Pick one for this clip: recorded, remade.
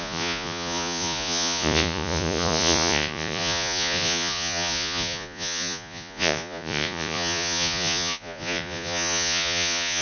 remade